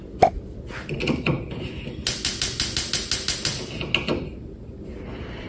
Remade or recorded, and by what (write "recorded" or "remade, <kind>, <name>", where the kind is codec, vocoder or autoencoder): recorded